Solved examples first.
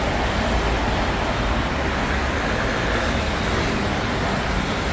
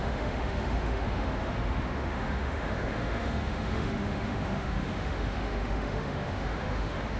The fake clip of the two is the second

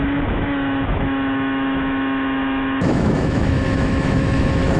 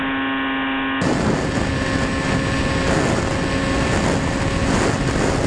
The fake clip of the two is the first